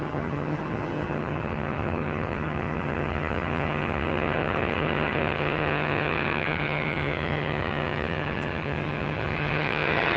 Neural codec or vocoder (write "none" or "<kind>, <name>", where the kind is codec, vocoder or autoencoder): vocoder, HiFi-GAN